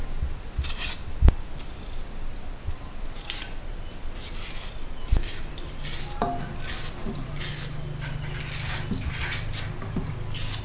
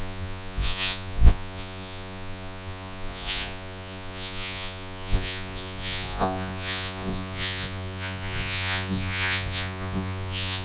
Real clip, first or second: first